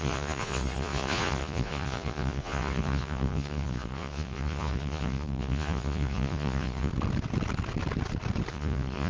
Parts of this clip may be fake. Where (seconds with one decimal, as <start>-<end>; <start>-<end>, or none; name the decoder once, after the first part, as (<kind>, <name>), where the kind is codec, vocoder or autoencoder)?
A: 0.0-6.9 (vocoder, Vocos); 8.5-9.1